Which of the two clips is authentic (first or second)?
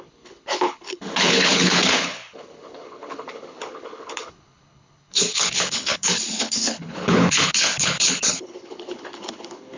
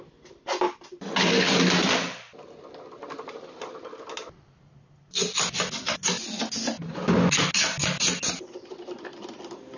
second